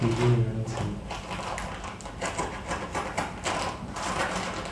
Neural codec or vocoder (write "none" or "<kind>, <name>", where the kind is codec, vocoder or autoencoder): none